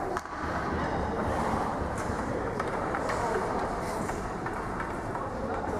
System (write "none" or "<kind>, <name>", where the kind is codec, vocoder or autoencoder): vocoder, BigVGAN v2